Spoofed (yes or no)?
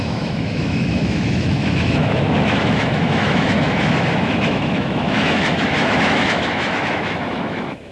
yes